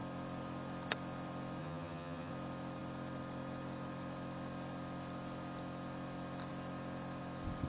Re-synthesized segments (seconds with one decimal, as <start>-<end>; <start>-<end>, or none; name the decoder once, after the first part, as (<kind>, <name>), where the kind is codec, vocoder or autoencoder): 1.6-2.3 (vocoder, HiFi-GAN)